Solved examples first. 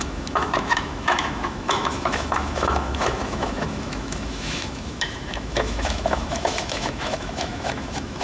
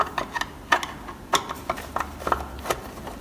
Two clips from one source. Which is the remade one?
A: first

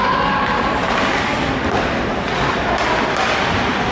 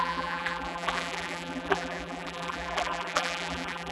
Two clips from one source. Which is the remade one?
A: second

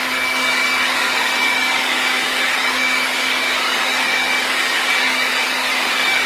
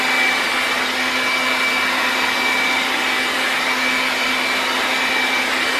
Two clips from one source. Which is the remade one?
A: first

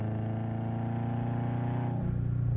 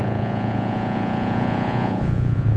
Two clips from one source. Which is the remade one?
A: second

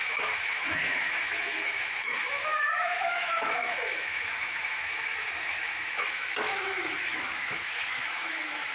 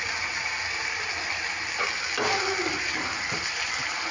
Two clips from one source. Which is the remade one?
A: first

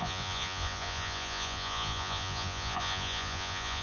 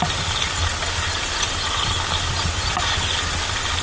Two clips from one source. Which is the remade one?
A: first